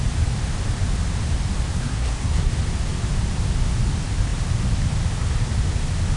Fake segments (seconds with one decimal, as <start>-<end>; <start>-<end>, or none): 1.7-2.5